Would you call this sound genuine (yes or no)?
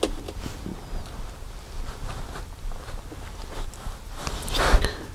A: yes